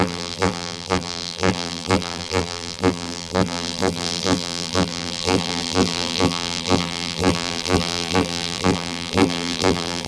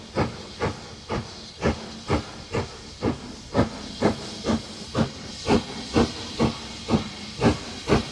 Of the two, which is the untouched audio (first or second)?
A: second